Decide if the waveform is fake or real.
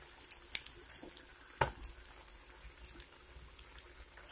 real